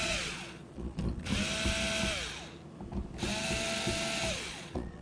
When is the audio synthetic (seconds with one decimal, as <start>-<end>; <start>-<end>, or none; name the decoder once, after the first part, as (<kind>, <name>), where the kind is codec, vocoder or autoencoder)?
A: 0.0-1.3 (vocoder, Vocos); 4.3-5.0